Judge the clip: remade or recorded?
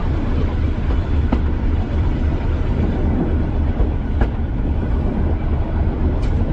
recorded